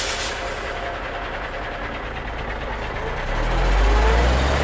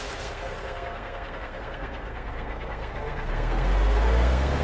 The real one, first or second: first